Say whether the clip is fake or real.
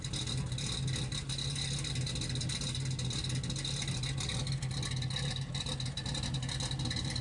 real